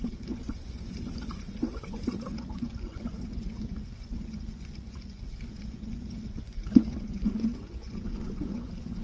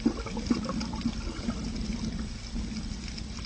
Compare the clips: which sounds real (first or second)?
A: second